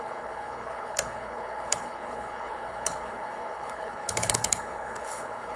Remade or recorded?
remade